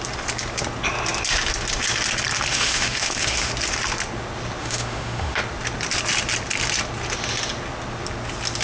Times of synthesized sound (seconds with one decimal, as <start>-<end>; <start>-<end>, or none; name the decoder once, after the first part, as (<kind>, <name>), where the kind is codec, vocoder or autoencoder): 2.5-3.5 (autoencoder, DAC-VAE); 4.6-5.4